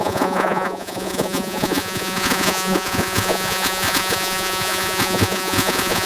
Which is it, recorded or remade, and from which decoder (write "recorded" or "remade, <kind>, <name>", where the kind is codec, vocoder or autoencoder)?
remade, vocoder, Vocos